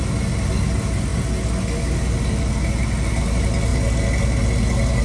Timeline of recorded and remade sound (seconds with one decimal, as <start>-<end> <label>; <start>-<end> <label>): 0.0-5.0 recorded